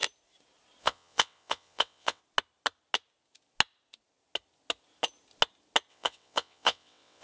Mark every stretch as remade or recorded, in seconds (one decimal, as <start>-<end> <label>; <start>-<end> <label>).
0.0-0.8 recorded; 0.8-2.2 remade; 2.2-5.9 recorded; 5.9-7.2 remade